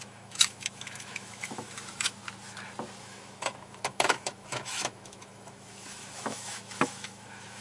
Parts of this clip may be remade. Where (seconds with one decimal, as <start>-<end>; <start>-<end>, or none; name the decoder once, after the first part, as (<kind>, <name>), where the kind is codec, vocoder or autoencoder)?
0.0-2.2 (autoencoder, DAC-VAE); 3.0-7.6